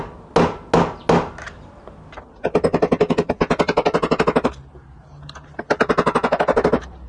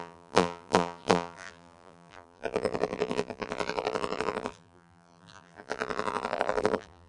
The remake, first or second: second